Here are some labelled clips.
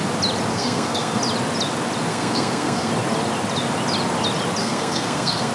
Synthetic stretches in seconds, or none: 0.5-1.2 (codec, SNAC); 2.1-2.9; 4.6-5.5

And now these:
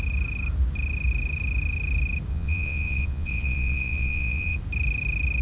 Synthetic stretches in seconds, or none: 2.3-4.6 (vocoder, Vocos)

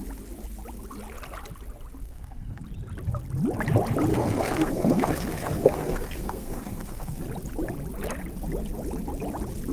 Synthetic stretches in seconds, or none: 2.0-2.6 (codec, SNAC); 4.1-7.2

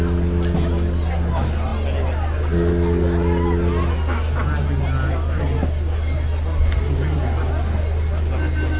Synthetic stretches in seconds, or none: none

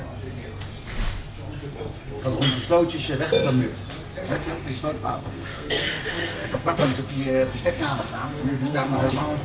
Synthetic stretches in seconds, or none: 1.7-2.2 (codec, SNAC); 4.2-9.4

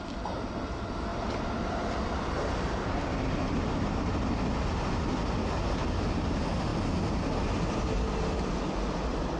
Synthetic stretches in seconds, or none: none